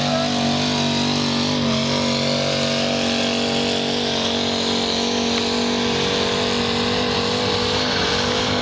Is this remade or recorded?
recorded